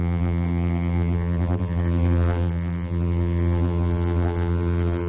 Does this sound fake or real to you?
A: fake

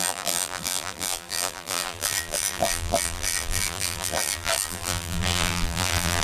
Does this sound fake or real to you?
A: fake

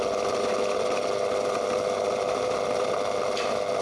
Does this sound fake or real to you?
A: real